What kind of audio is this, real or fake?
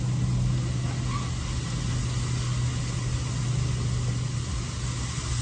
real